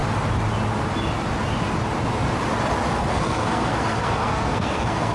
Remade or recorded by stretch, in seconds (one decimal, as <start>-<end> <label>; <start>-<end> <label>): 0.0-3.1 recorded; 3.1-5.1 remade